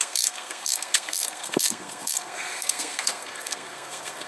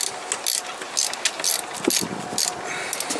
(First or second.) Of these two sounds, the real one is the second